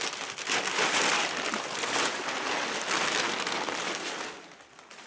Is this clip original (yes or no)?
yes